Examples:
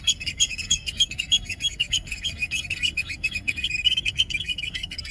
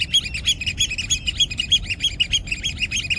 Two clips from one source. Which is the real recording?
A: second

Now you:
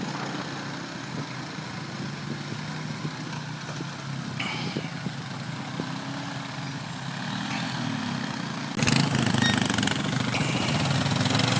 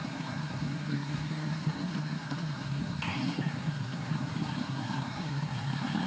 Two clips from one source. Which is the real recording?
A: first